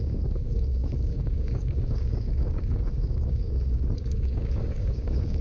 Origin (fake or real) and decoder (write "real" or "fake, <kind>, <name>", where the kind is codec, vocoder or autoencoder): fake, codec, DAC